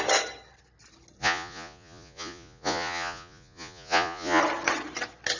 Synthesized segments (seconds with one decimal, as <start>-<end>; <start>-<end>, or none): 1.2-4.4